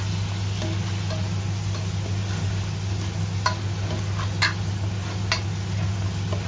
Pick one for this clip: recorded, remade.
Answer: recorded